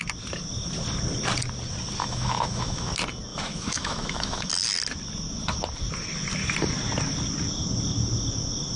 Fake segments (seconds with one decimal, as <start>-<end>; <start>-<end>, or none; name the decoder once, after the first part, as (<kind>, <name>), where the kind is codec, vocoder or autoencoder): 2.0-2.9 (autoencoder, DAC-VAE); 3.3-4.5